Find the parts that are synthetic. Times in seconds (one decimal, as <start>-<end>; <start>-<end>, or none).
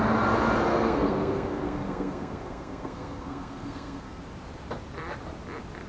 0.7-4.2